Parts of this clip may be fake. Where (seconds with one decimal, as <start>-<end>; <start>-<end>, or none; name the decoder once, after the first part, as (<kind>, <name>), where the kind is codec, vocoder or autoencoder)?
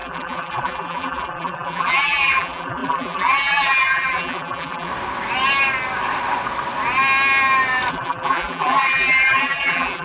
0.0-4.9 (vocoder, BigVGAN v2); 7.9-10.0